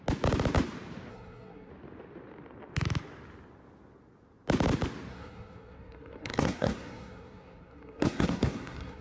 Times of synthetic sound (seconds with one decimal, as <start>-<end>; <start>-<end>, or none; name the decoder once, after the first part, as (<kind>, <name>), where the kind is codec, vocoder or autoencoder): 1.1-1.7 (codec, SNAC); 5.1-9.0